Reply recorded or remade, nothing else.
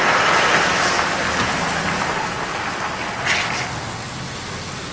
recorded